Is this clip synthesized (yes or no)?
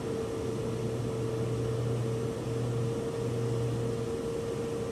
no